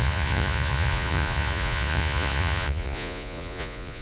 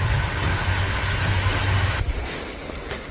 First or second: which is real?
second